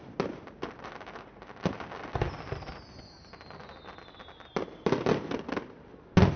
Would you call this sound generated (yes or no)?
no